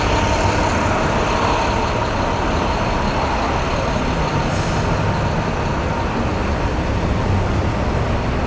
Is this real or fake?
real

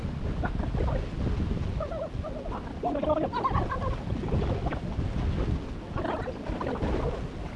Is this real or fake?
real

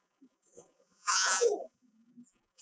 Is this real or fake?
fake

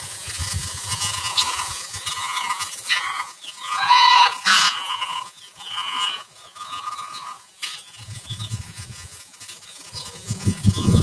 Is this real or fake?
fake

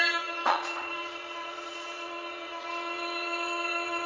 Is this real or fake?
fake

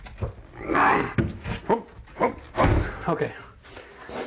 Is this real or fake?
real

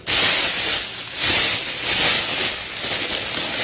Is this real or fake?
real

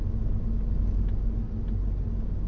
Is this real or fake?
real